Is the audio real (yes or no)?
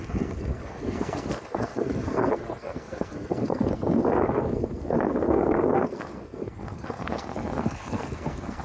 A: no